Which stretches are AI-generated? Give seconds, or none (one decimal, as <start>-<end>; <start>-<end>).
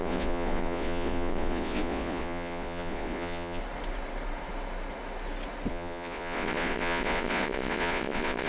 0.0-3.6; 5.7-8.5